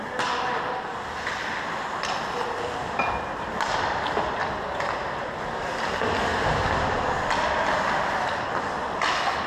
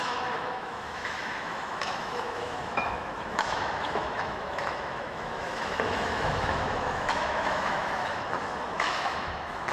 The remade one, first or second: second